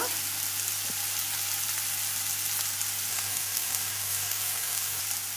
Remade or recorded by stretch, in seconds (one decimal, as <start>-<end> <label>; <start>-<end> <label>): 0.0-3.1 recorded; 3.1-5.0 remade; 5.0-5.4 recorded